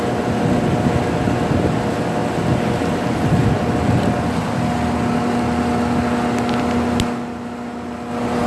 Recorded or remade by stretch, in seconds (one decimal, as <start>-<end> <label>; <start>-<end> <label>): 0.0-8.5 recorded